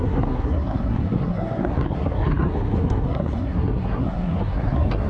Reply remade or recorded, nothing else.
remade